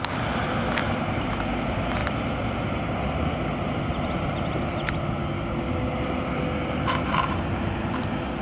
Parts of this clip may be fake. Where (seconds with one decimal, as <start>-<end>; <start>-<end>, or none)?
none